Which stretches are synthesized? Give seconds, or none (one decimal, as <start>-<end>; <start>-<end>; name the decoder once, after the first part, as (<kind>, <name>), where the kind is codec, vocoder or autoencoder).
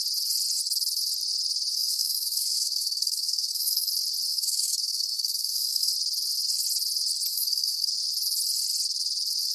1.7-3.9 (codec, SNAC); 4.3-5.9; 7.3-7.9